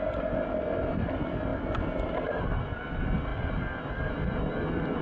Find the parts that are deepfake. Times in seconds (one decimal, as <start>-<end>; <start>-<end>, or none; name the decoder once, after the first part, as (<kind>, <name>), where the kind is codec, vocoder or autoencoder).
none